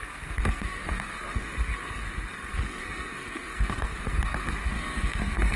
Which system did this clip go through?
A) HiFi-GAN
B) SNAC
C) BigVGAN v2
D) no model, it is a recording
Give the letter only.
B